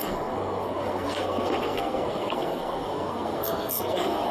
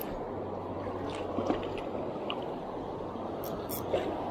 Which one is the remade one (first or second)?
first